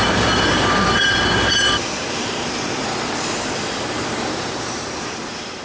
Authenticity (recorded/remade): remade